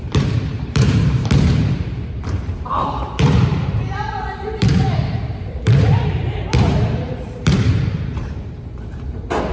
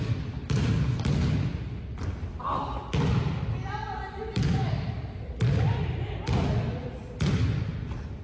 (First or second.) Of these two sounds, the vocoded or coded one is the first